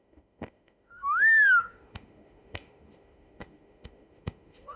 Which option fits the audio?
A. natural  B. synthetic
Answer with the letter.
B